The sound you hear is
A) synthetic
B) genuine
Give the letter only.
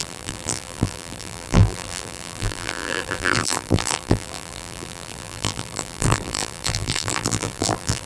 A